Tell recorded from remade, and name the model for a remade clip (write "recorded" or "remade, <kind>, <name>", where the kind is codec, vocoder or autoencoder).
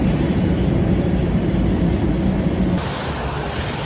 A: recorded